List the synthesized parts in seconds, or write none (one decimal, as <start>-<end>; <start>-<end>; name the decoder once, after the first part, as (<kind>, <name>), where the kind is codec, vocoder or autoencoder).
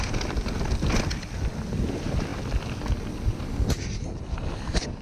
none